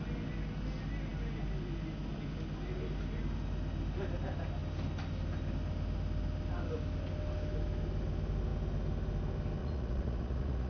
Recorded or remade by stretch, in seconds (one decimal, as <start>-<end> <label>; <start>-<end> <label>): 0.0-9.6 recorded; 9.6-10.7 remade